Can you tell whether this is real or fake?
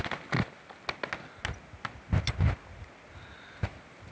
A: real